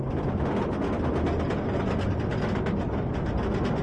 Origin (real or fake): real